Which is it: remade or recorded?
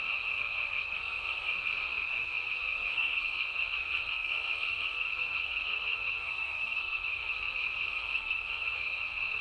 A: remade